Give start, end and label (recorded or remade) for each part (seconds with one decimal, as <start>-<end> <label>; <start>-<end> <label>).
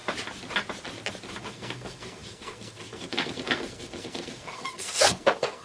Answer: 0.0-1.4 recorded; 1.4-5.6 remade